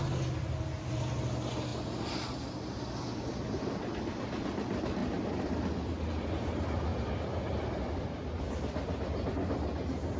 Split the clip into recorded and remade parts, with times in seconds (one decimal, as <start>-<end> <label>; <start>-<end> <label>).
0.0-10.2 recorded